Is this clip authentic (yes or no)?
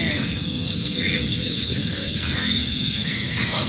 no